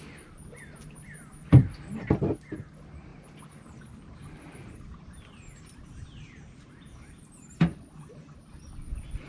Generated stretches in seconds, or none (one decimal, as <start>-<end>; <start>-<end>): none